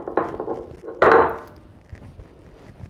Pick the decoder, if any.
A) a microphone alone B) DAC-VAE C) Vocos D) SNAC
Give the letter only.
A